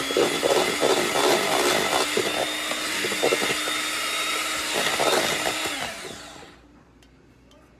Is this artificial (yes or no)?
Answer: no